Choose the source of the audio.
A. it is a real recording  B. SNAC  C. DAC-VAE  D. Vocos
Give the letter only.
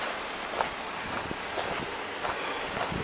A